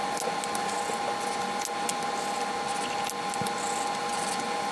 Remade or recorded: recorded